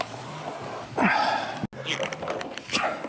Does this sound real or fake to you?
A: real